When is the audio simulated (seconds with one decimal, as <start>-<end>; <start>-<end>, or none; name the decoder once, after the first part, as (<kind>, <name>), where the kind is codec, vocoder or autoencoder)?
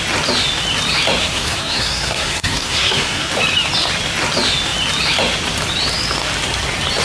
1.2-3.3 (codec, SNAC)